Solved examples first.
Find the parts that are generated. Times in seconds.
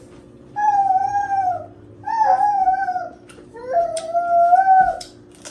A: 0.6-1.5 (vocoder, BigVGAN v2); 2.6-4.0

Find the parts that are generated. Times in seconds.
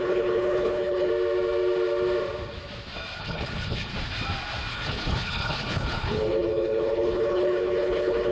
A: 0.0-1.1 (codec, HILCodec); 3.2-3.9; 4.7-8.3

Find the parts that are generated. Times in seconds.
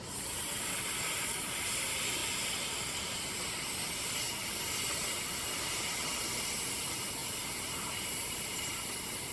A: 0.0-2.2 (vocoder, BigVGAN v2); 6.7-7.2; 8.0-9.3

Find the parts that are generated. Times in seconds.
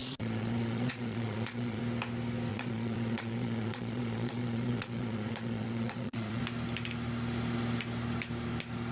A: 0.0-1.8 (vocoder, Vocos); 2.5-6.4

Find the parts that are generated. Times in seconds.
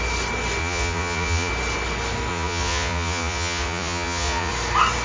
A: 0.6-1.5 (vocoder, Vocos); 2.3-4.5